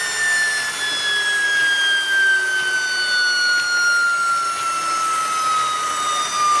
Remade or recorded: recorded